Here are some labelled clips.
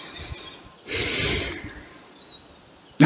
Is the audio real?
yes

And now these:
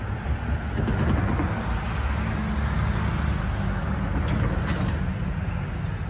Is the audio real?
yes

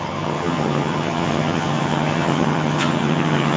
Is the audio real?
no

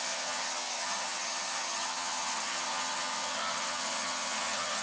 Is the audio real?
no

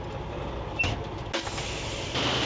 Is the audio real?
yes